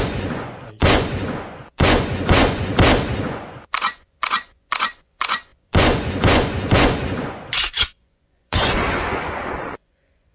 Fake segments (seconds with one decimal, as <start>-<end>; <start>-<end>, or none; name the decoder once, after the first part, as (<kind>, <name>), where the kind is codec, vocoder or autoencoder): 0.0-2.7 (vocoder, Vocos); 3.2-10.3